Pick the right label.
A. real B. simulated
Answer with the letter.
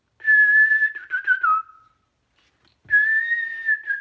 A